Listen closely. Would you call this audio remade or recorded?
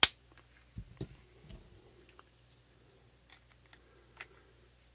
recorded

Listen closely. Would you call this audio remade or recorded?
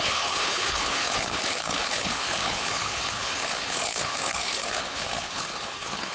remade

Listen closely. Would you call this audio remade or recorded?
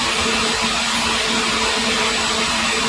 recorded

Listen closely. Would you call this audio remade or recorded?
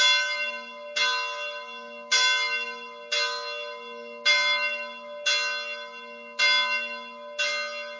recorded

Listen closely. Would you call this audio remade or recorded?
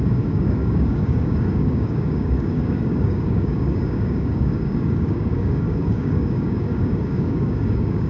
remade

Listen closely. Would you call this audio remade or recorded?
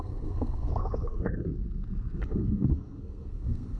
remade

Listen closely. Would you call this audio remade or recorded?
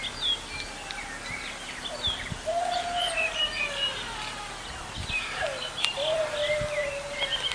recorded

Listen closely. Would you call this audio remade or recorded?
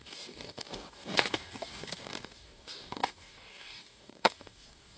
remade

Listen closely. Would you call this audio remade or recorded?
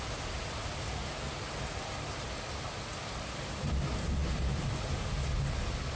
recorded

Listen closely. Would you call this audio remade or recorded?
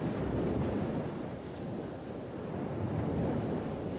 recorded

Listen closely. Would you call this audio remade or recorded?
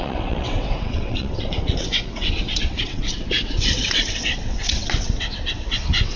remade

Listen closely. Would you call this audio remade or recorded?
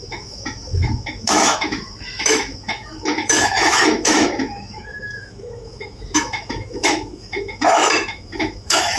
remade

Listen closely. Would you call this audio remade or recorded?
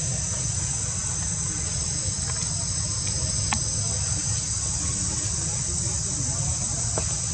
recorded